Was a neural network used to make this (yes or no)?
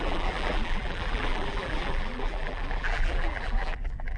yes